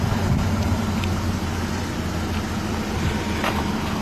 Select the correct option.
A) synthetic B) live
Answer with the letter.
A